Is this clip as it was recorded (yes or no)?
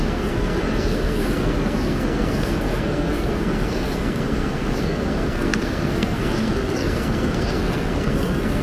no